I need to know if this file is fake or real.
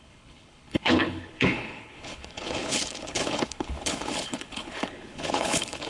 fake